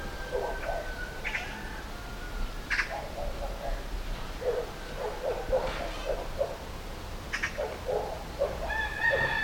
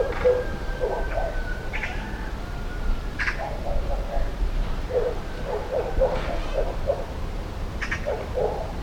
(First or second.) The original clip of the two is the first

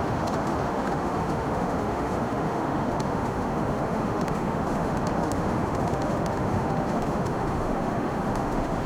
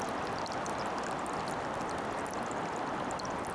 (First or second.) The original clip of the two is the second